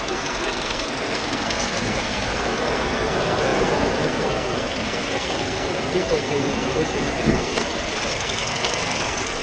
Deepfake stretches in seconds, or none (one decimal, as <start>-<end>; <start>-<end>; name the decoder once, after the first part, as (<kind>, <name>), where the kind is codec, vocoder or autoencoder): 0.0-9.4 (codec, SNAC)